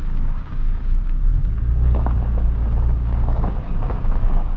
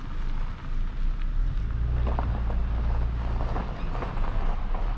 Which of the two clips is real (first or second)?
second